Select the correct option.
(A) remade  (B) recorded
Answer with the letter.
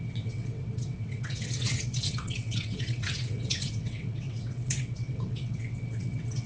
A